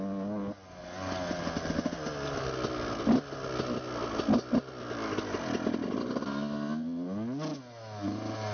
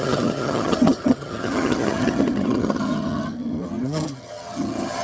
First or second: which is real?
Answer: first